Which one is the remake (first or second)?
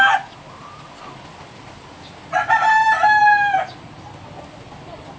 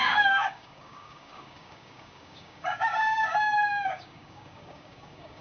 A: second